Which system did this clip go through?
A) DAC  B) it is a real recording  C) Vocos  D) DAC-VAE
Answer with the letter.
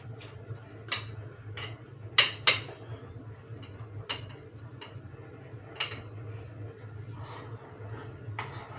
B